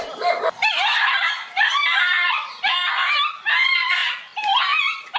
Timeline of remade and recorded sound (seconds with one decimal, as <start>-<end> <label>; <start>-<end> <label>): 0.0-2.8 remade; 2.8-3.4 recorded; 3.4-5.2 remade